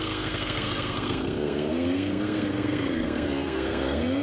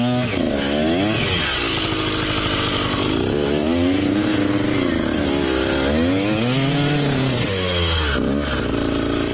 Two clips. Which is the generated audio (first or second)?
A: first